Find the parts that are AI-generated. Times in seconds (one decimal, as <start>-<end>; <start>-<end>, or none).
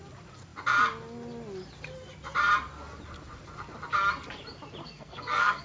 4.8-5.6